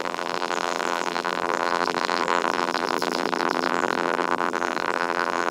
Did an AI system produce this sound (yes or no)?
yes